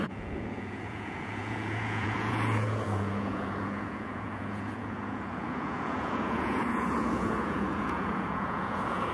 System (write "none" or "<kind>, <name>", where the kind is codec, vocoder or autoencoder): vocoder, Vocos